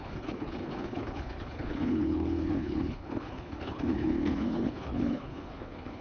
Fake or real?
fake